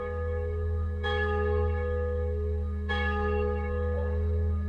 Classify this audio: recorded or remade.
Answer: remade